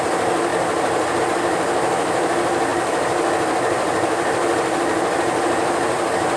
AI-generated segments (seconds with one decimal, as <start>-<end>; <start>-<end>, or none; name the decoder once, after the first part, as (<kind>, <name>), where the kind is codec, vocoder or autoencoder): none

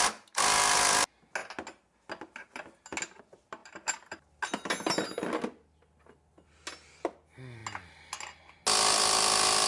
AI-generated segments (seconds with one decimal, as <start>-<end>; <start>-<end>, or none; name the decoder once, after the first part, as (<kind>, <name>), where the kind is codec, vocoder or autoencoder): none

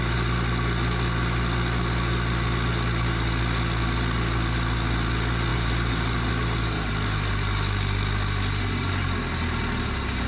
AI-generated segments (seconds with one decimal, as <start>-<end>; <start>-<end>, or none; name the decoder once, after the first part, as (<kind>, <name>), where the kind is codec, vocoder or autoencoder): 5.5-6.3 (vocoder, BigVGAN v2)

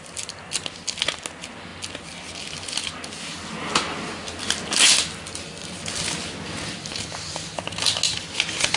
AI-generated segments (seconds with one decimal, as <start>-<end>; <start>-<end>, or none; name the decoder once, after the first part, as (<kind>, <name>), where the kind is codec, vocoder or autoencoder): none

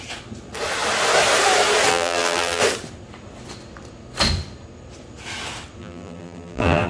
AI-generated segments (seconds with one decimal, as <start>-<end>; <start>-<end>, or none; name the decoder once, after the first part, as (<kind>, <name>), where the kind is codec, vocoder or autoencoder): 1.9-2.6 (vocoder, BigVGAN v2); 5.8-6.9